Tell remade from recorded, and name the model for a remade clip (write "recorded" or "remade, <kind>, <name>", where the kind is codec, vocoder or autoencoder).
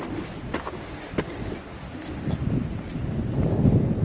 remade, vocoder, BigVGAN v2